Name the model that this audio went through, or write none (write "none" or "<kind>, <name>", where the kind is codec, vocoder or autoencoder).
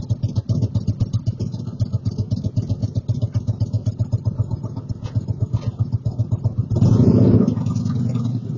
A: none